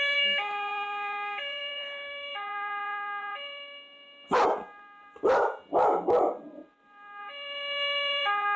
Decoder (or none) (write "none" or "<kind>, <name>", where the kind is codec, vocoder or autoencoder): vocoder, BigVGAN v2